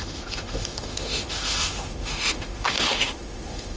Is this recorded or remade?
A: remade